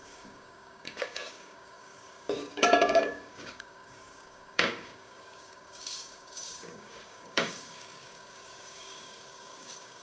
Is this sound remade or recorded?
remade